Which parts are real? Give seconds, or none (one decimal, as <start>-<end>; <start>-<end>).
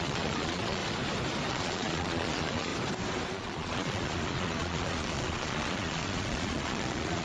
0.8-1.5; 2.7-3.3